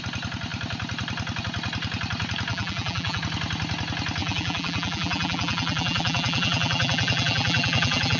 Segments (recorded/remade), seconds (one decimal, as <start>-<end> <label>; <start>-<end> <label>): 0.0-2.5 recorded; 2.5-3.2 remade; 3.2-4.2 recorded; 4.2-8.2 remade